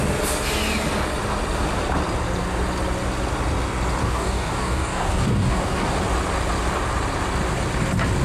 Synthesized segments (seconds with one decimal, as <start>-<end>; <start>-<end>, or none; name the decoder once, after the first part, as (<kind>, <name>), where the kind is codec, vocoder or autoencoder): 4.0-5.9 (codec, DAC)